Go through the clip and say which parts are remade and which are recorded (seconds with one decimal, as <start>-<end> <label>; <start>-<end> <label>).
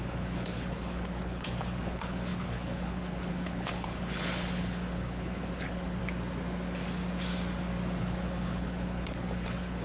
0.0-6.0 remade; 6.0-8.0 recorded; 8.0-9.8 remade